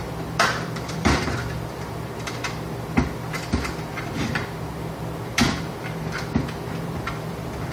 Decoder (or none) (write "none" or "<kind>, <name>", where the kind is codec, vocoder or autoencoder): vocoder, BigVGAN v2